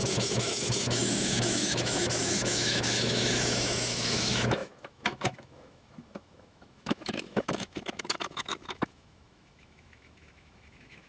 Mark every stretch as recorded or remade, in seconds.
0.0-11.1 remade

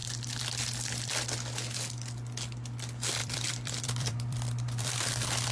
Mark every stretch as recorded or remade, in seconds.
0.0-3.2 recorded; 3.2-5.0 remade; 5.0-5.5 recorded

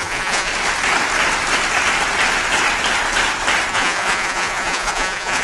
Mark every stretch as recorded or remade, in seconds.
0.0-0.5 remade; 0.5-3.7 recorded; 3.7-5.4 remade

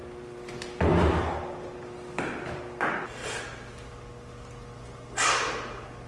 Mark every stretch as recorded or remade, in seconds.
0.0-2.6 remade; 2.6-6.1 recorded

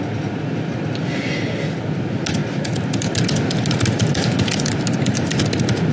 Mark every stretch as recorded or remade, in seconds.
0.0-5.9 recorded